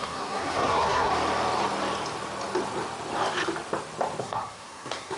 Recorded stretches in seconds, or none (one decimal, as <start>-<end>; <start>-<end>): 1.1-4.2